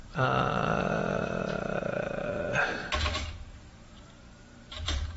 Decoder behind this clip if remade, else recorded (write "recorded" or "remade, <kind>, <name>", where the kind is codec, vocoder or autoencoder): remade, vocoder, BigVGAN v2